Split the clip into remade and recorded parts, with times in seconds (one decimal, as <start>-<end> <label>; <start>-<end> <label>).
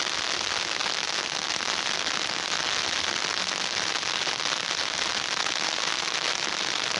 0.0-7.0 recorded